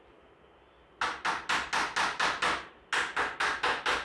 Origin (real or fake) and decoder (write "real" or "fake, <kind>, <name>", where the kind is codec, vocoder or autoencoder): real